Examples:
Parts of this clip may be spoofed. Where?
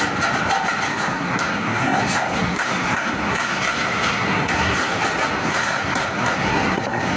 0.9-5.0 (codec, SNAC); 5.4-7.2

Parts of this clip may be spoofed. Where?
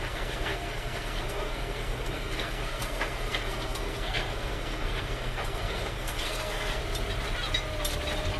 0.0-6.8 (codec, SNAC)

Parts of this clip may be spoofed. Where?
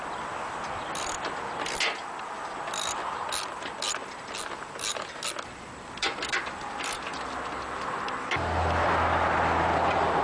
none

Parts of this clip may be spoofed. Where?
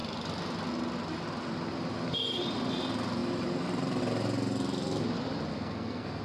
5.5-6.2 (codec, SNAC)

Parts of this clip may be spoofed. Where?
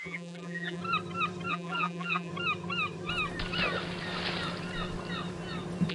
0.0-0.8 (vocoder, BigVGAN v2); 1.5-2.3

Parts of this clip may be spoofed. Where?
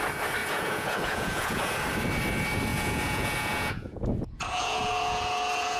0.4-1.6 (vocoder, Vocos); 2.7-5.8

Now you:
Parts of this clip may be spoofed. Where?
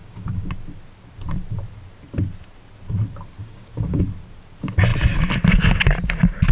0.0-0.5 (codec, DAC); 3.4-4.0